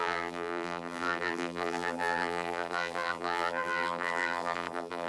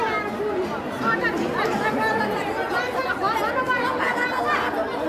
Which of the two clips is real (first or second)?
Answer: second